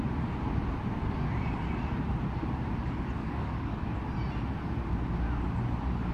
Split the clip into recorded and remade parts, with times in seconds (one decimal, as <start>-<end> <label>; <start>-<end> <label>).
0.0-3.2 recorded; 3.2-3.9 remade; 3.9-6.1 recorded